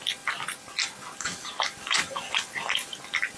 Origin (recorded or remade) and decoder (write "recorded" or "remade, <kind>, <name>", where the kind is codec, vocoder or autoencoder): recorded